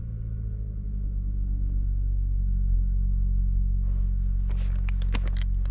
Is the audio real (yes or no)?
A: yes